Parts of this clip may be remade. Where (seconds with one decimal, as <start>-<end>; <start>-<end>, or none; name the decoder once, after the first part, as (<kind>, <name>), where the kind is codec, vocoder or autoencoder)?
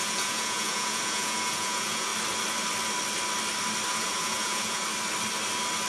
0.0-2.1 (vocoder, Vocos); 3.9-4.8